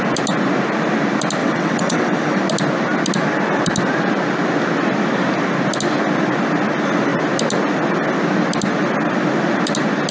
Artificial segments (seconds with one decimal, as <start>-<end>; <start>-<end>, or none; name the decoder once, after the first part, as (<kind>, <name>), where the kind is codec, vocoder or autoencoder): 1.4-2.4 (vocoder, WaveNeXt)